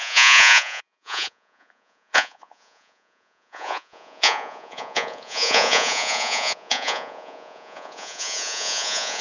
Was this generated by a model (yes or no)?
yes